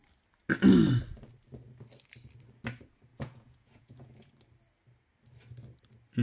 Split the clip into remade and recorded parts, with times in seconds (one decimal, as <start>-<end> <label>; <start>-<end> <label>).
0.0-3.1 recorded; 3.1-4.3 remade; 4.3-6.2 recorded